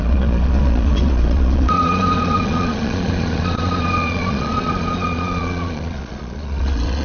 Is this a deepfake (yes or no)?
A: yes